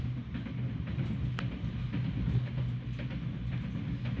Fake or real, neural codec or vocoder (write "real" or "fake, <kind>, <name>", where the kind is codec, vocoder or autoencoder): real